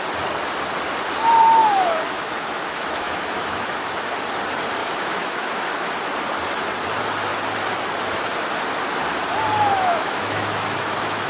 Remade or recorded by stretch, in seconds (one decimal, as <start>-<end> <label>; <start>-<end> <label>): 0.0-1.6 recorded; 1.6-4.1 remade; 4.1-4.8 recorded; 4.8-5.9 remade; 5.9-9.7 recorded; 9.7-11.3 remade